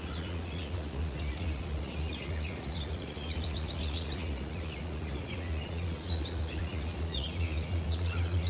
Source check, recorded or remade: remade